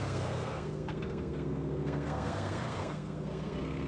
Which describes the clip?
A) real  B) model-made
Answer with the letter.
B